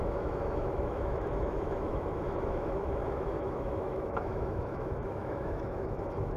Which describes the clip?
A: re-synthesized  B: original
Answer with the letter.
A